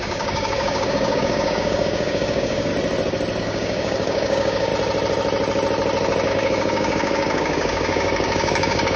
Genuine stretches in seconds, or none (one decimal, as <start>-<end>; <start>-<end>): 2.7-3.4; 4.7-6.3